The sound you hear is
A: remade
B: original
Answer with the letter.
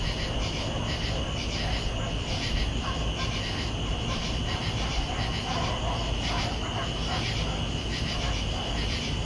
B